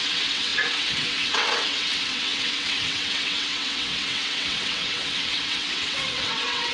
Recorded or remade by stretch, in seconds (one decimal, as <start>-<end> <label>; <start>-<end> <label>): 0.0-6.7 remade